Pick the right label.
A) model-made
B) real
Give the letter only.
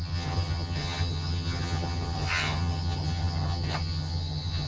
A